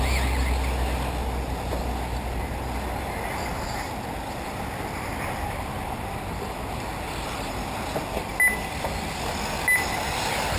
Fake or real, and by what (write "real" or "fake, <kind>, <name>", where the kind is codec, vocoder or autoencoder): real